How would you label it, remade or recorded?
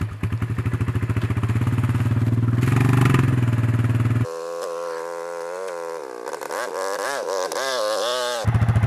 recorded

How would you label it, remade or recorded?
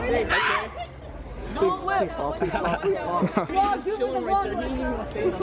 recorded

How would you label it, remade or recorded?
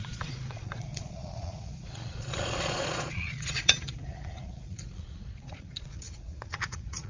remade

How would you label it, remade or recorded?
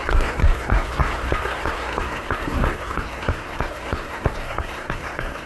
remade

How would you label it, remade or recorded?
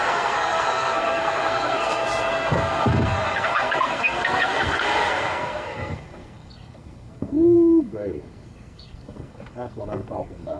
remade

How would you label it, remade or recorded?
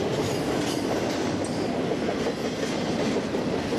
recorded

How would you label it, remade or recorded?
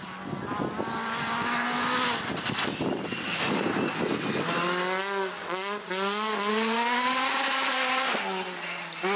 recorded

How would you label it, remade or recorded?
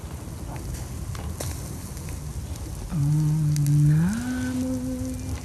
recorded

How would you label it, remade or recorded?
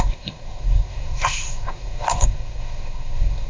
remade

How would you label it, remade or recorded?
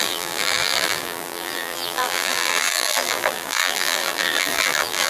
remade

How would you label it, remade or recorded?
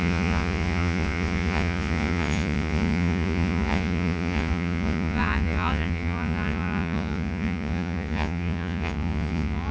remade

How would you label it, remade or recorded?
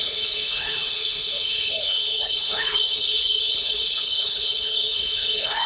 remade